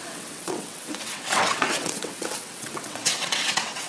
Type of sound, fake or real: fake